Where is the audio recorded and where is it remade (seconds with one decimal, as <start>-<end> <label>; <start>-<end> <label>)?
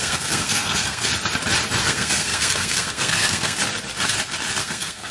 0.0-1.1 remade; 1.1-1.8 recorded; 1.8-3.6 remade; 3.6-4.6 recorded; 4.6-5.1 remade